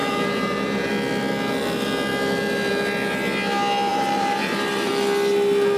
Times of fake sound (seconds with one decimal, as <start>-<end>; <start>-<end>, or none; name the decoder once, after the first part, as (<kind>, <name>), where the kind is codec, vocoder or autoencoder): 0.0-0.9 (vocoder, BigVGAN v2); 3.9-4.9